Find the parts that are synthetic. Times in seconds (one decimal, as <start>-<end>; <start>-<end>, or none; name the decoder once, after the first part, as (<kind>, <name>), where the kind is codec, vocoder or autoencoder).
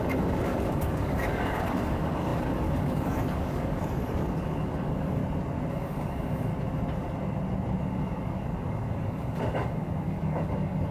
0.0-5.2 (codec, DAC); 5.7-6.5; 7.8-10.9